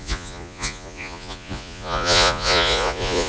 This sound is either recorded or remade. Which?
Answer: remade